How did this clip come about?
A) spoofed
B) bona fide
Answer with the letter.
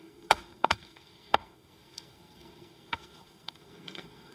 A